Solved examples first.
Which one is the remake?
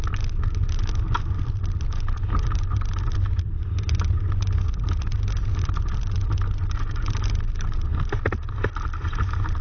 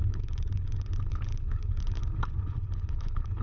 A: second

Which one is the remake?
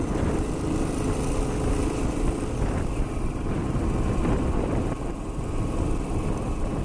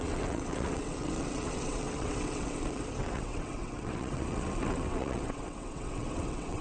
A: second